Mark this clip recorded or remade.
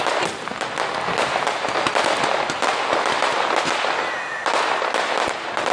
recorded